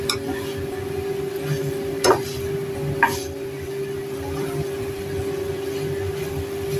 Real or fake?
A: real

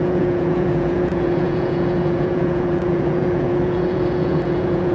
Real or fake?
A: fake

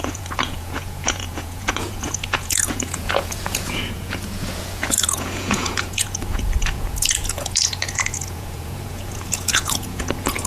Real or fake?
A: fake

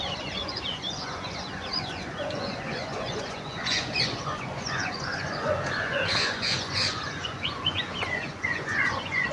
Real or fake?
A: fake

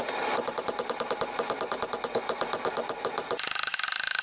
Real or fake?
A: real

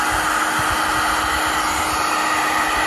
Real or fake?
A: real